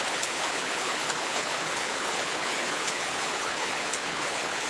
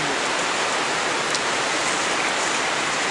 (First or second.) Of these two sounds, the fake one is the first